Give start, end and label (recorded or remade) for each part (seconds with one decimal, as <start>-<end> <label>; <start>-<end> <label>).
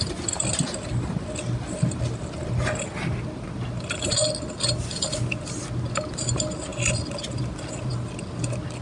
0.0-8.8 recorded